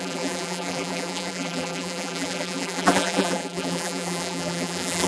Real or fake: fake